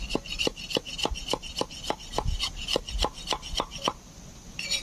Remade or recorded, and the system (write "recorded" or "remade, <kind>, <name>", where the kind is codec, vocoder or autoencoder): recorded